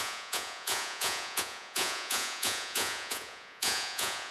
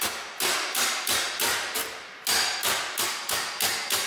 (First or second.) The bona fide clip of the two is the second